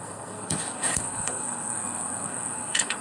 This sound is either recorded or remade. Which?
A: remade